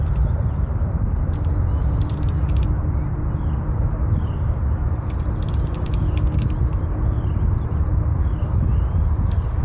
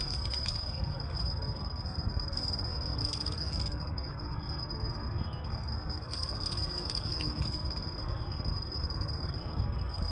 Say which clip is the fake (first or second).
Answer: second